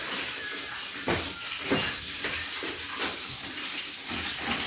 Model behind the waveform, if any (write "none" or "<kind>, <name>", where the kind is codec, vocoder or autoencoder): none